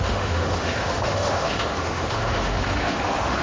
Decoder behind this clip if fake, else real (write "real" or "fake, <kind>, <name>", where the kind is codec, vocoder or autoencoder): fake, autoencoder, DAC-VAE